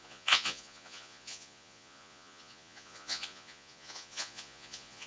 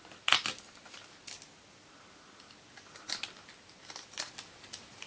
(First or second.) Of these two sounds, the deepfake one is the first